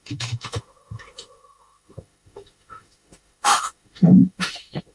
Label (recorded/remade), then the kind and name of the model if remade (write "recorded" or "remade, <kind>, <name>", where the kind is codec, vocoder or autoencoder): remade, autoencoder, DAC-VAE